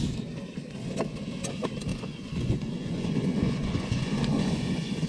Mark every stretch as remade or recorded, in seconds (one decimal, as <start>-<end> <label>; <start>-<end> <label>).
0.0-1.9 recorded; 1.9-5.1 remade